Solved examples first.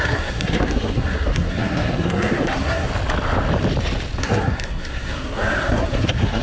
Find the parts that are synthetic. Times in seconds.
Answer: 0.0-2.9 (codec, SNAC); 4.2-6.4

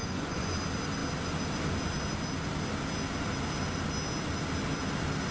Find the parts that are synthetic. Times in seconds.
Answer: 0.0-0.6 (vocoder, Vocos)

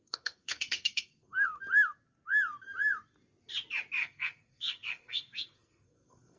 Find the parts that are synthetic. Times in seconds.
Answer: 0.0-1.6 (codec, SNAC); 4.0-6.4

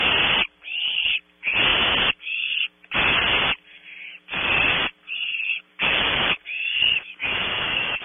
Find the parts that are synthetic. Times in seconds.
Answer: 5.7-8.0 (autoencoder, DAC-VAE)

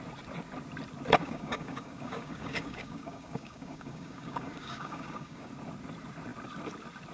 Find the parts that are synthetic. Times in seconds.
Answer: 1.2-5.5 (codec, DAC)

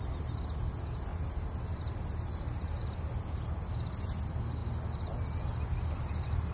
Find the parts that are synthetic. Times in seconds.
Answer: 1.1-1.8 (vocoder, BigVGAN v2)

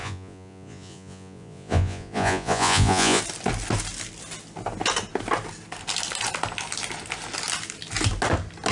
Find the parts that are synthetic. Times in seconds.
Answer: 0.0-3.2 (vocoder, Vocos)

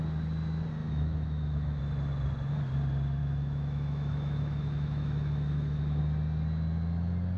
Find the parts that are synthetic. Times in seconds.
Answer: 0.8-1.8 (autoencoder, DAC-VAE); 3.2-6.0